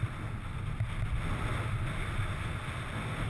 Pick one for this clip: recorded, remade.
recorded